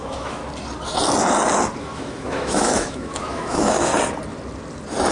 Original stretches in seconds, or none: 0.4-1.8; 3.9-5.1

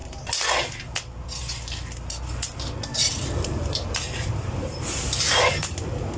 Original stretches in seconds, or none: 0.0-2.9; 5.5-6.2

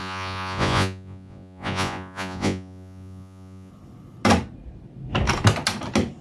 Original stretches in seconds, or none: 3.7-6.2

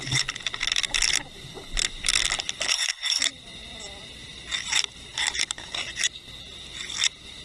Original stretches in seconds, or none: 0.0-2.7; 3.2-7.4

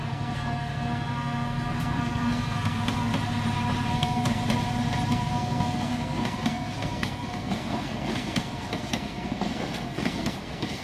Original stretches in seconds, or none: 3.1-3.9; 4.4-5.1

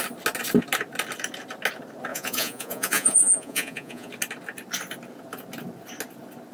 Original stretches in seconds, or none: 0.0-2.1; 4.1-6.5

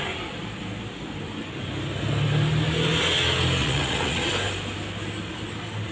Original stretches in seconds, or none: 0.0-3.6; 4.3-5.9